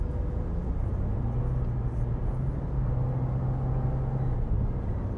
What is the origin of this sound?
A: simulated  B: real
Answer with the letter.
B